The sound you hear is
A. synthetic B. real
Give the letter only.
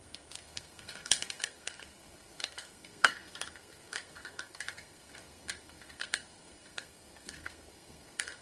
A